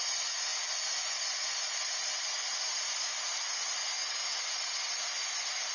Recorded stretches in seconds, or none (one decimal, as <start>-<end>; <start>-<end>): 0.0-5.7